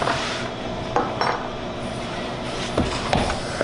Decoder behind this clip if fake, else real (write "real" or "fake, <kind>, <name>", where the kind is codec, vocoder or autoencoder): fake, vocoder, BigVGAN v2